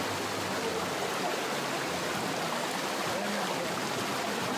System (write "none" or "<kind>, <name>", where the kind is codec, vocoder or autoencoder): none